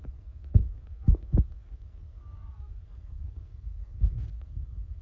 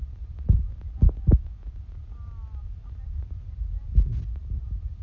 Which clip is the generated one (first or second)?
first